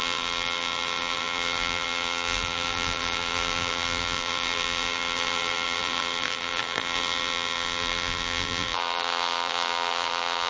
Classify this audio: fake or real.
fake